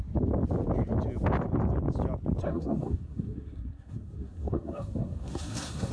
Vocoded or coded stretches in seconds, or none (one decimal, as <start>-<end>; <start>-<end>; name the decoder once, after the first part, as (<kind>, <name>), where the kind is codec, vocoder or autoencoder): 2.4-5.9 (codec, SNAC)